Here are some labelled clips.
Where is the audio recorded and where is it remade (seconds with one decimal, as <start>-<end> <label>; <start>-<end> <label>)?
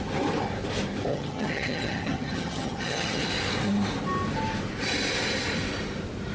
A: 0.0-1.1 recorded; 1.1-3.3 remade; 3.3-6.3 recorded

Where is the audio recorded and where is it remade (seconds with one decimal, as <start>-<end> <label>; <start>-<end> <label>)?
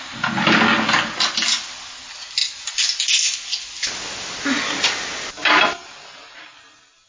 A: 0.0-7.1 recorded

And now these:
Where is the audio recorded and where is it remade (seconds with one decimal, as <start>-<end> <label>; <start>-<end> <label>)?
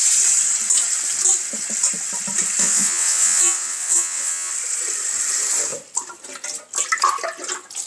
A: 0.0-2.6 recorded; 2.6-4.5 remade; 4.5-7.9 recorded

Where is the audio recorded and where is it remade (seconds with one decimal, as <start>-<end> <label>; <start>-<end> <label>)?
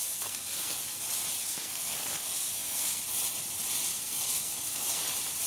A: 0.0-1.0 remade; 1.0-1.4 recorded; 1.4-3.0 remade; 3.0-3.9 recorded; 3.9-5.0 remade; 5.0-5.5 recorded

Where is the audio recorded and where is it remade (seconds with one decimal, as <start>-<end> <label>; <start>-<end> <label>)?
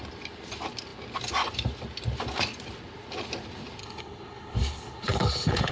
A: 0.0-3.8 recorded; 3.8-5.7 remade